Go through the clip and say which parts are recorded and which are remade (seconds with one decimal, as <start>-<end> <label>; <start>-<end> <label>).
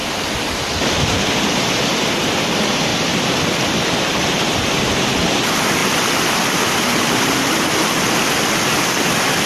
0.0-9.5 recorded